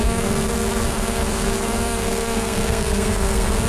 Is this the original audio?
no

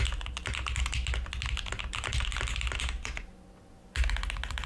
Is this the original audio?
yes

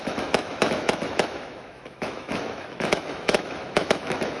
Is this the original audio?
no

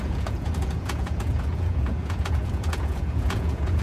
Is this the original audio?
no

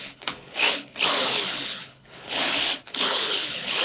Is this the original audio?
no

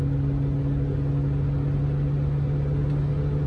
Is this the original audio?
yes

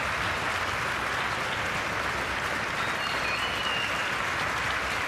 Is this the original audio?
yes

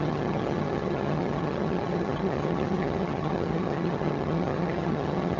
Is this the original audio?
no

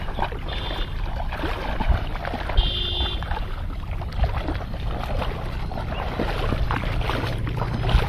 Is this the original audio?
yes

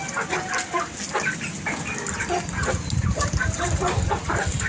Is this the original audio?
yes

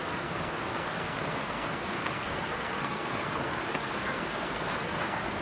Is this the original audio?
no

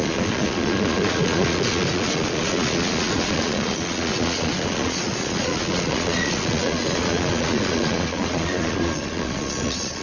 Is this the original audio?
no